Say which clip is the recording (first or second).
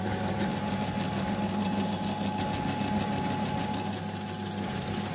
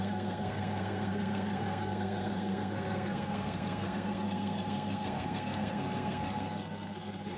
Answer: first